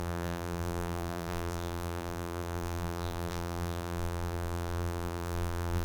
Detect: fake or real fake